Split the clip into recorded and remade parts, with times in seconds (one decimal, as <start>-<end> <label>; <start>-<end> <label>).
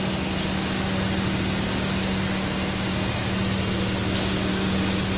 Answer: 0.0-5.2 recorded